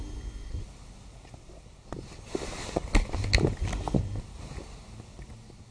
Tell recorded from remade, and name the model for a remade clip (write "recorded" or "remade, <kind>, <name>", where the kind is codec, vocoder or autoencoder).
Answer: recorded